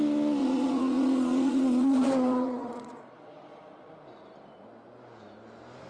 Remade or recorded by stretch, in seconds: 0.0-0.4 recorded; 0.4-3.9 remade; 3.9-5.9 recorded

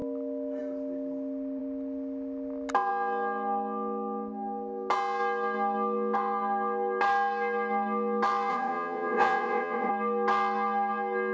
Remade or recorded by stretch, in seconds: 0.0-8.5 recorded; 8.5-9.9 remade; 9.9-11.3 recorded